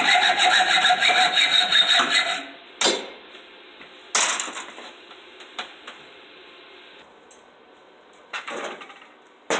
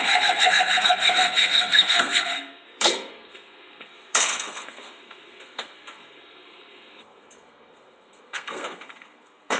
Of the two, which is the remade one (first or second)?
second